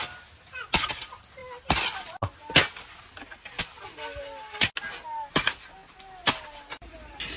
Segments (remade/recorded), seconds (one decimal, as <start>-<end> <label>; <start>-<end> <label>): 0.0-7.4 recorded